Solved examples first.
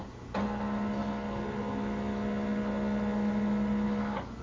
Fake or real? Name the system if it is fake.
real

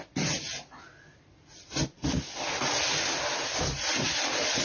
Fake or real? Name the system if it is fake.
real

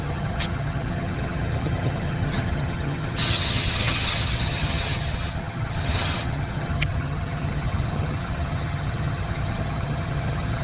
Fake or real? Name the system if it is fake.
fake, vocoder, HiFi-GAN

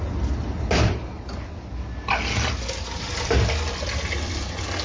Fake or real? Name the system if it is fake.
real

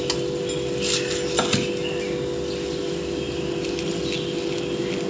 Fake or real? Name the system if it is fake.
real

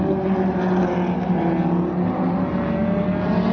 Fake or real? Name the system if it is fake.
real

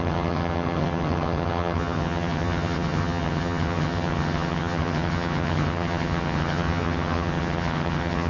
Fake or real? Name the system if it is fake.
fake, vocoder, HiFi-GAN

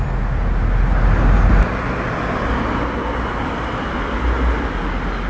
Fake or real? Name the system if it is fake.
real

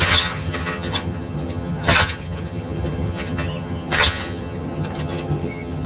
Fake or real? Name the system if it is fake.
fake, vocoder, HiFi-GAN